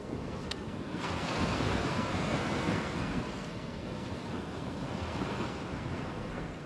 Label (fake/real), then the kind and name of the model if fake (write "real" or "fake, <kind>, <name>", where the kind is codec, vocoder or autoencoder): fake, codec, SNAC